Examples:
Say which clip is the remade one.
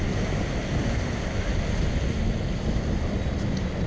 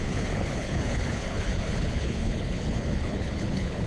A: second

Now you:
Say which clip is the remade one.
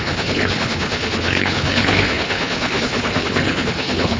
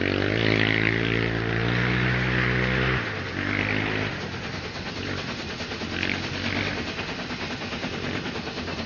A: first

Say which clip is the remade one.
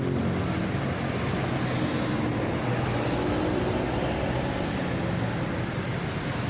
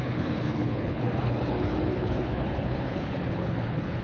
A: second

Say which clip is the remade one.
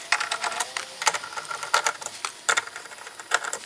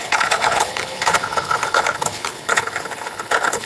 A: second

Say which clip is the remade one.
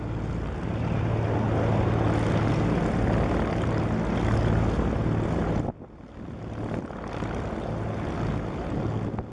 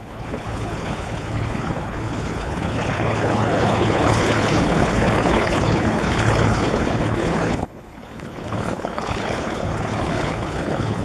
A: second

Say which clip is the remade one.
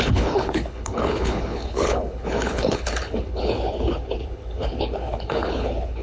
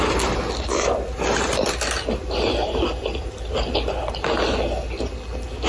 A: first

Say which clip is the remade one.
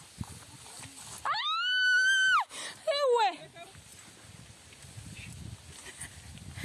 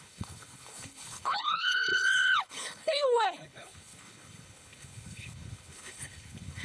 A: second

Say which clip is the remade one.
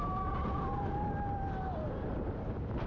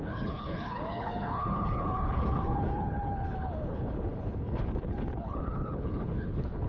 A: second